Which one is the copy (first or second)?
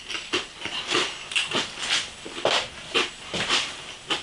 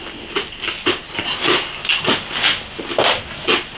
first